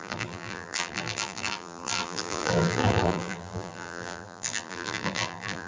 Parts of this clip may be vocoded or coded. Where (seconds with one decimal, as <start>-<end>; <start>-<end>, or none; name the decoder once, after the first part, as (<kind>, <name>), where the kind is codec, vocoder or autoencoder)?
0.0-5.7 (vocoder, BigVGAN v2)